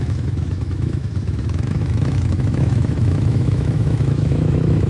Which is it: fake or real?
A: fake